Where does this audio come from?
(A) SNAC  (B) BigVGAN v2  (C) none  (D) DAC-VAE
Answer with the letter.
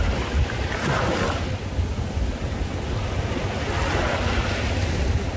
C